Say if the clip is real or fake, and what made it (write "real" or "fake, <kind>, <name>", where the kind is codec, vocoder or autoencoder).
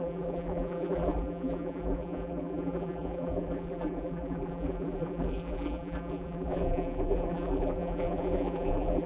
fake, vocoder, BigVGAN v2